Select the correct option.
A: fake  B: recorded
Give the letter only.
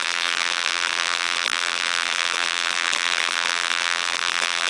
A